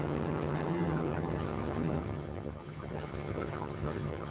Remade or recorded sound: remade